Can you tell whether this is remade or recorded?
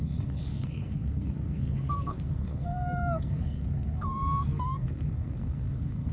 remade